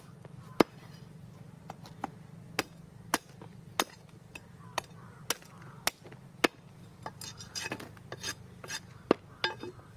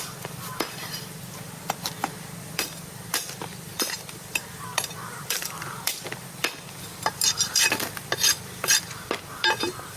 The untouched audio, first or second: first